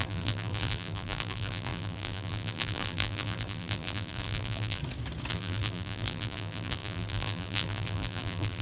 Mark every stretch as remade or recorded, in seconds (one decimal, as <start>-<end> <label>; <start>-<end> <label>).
0.0-4.8 remade; 4.8-5.3 recorded; 5.3-8.6 remade